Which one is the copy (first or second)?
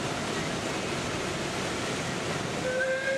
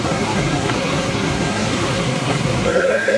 second